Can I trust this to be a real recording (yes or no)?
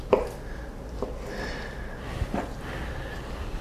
yes